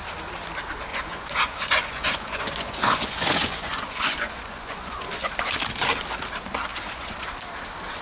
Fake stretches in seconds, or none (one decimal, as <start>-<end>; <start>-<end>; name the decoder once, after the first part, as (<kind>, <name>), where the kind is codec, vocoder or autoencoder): 0.9-5.3 (vocoder, Vocos); 6.7-7.3